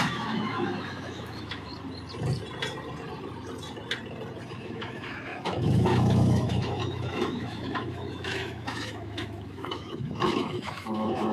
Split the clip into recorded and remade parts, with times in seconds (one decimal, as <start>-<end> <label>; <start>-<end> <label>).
0.0-1.7 remade; 1.7-4.5 recorded; 4.5-11.3 remade